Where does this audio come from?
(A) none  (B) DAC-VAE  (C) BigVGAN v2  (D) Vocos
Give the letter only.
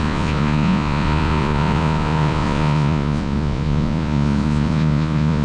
D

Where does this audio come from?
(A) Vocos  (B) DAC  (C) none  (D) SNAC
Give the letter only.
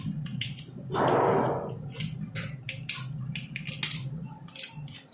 C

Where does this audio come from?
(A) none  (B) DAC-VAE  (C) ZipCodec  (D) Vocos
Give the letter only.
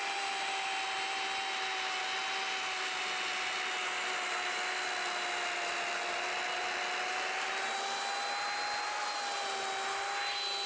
A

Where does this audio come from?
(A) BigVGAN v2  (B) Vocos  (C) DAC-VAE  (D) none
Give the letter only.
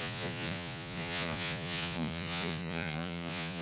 B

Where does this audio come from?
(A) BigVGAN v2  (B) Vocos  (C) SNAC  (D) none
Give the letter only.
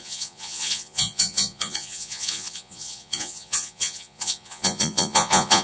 B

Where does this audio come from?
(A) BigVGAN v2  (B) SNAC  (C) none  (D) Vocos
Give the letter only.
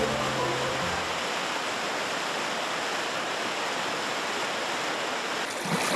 C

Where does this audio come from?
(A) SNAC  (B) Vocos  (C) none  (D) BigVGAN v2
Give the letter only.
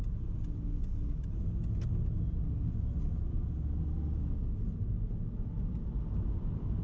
C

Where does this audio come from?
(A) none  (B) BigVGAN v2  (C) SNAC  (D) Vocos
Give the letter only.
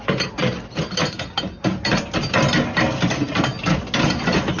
A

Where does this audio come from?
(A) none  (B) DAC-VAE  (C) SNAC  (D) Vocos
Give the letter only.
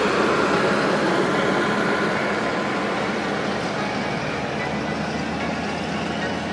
A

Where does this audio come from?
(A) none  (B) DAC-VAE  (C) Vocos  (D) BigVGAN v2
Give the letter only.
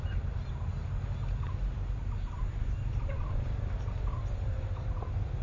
A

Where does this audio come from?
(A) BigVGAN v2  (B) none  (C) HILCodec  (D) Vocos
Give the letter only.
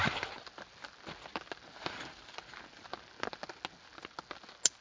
B